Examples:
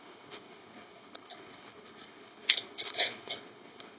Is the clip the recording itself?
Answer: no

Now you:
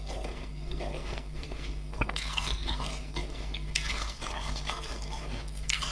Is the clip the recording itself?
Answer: no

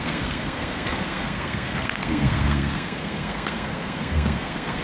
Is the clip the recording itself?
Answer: no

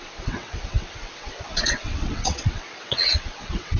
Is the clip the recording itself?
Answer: no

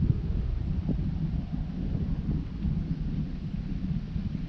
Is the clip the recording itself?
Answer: yes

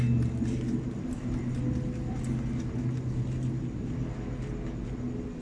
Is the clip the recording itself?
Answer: yes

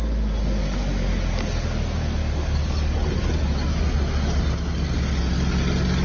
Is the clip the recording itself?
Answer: yes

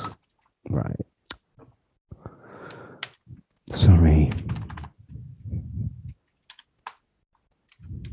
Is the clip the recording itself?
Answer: yes